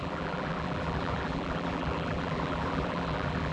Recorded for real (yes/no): no